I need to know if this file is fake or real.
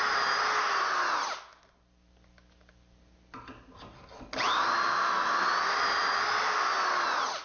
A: real